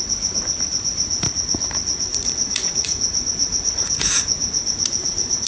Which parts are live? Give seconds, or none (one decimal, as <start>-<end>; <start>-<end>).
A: 0.0-2.1